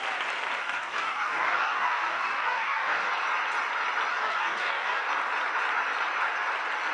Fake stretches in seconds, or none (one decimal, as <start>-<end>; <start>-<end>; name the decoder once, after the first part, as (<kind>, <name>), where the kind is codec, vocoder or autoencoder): 0.6-3.1 (codec, DAC); 4.1-5.0